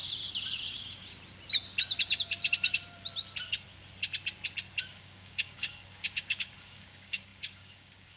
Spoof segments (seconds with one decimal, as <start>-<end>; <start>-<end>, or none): 0.7-1.1; 4.8-8.2